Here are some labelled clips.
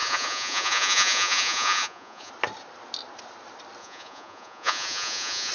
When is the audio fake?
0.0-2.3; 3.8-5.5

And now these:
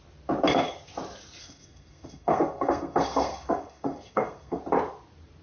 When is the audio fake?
1.4-4.6

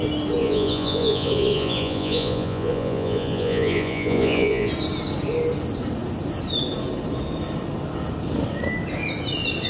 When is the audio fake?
0.4-4.7

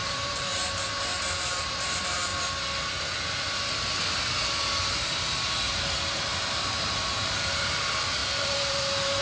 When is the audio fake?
0.0-2.3; 4.9-9.2